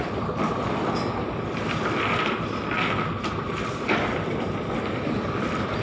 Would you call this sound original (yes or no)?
yes